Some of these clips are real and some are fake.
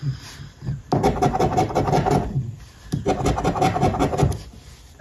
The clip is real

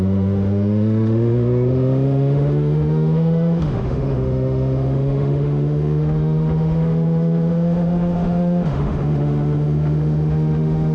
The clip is fake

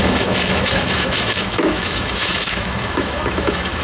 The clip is fake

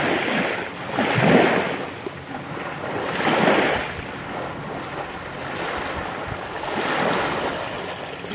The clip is real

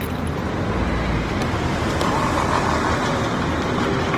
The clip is real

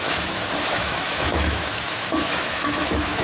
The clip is fake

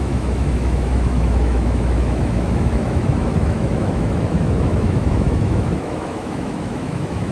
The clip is fake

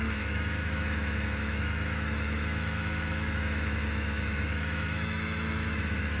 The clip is fake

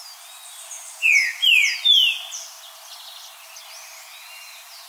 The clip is real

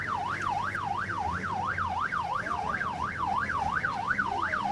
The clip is real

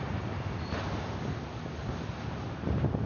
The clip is real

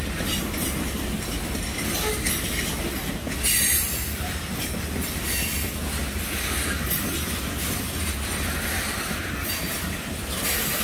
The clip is real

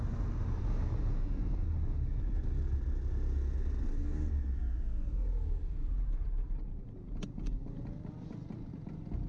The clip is real